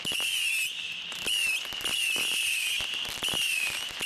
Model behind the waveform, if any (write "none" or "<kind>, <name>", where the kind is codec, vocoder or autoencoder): none